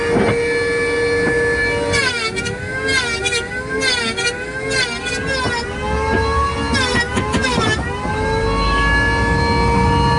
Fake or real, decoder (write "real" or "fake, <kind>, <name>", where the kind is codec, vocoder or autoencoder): real